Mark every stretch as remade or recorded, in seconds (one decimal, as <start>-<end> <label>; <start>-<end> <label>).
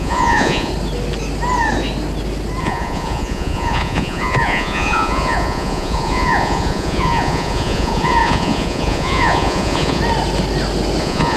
0.0-0.7 remade; 0.7-2.6 recorded; 2.6-10.0 remade; 10.0-11.0 recorded; 11.0-11.4 remade